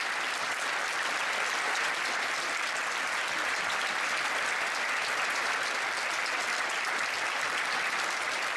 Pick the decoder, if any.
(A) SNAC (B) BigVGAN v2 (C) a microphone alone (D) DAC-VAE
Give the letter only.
C